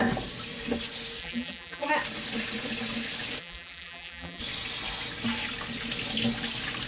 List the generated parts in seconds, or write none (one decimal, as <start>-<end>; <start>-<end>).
1.2-1.9; 3.4-4.4